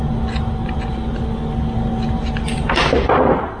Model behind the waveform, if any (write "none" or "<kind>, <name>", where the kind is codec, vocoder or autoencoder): none